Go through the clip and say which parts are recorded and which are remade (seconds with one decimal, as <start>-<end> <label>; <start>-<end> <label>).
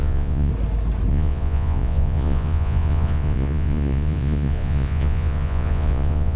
0.0-0.5 remade; 0.5-1.1 recorded; 1.1-6.4 remade